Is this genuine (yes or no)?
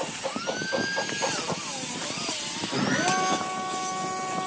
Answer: yes